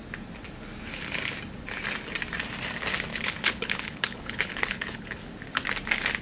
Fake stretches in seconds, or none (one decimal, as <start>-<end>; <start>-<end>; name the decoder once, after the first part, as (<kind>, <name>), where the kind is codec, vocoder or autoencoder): 3.1-5.2 (codec, HILCodec)